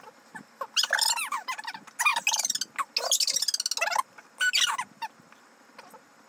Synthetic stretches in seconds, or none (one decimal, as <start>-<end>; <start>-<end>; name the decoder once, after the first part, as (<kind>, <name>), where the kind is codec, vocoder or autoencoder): none